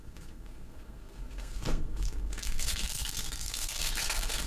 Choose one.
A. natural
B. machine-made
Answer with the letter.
B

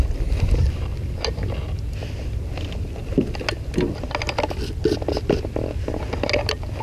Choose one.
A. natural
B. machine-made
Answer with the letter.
A